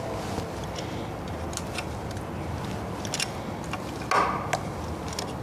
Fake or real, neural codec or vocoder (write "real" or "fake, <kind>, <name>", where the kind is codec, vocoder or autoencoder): real